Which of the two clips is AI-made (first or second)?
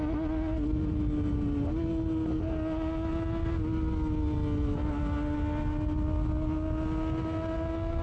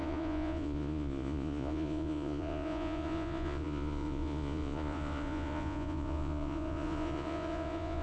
second